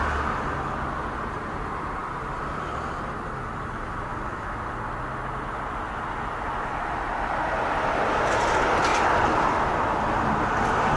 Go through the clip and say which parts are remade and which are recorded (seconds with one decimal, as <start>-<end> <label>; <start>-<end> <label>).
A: 0.0-11.0 recorded